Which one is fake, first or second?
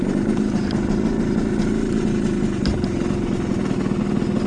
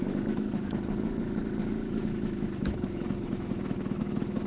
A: second